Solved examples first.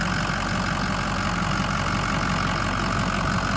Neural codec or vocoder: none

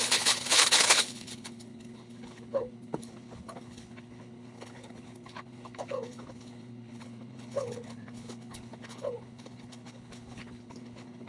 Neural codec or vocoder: codec, HILCodec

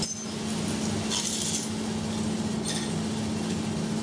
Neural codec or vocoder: none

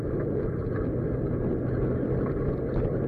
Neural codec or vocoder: none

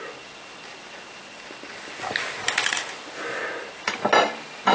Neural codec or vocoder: none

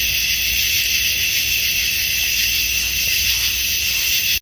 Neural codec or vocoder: none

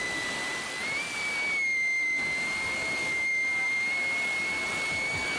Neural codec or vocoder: none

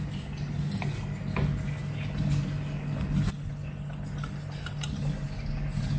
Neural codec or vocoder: none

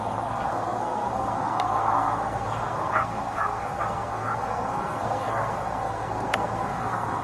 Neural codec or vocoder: codec, SNAC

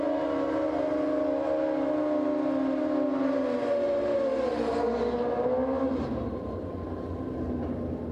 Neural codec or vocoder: none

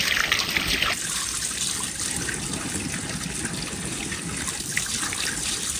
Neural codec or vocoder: none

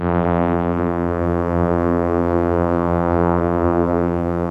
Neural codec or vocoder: vocoder, BigVGAN v2